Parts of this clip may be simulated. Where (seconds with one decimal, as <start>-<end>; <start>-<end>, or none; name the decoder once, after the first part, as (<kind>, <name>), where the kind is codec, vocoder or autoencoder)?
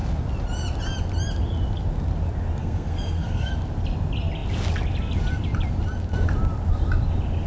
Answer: 2.6-3.5 (codec, SNAC)